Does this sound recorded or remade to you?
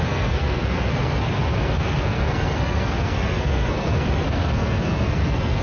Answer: remade